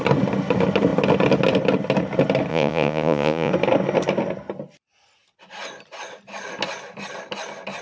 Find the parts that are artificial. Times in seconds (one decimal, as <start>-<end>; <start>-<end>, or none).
2.5-3.5